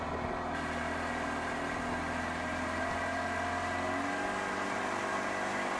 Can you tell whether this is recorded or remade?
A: recorded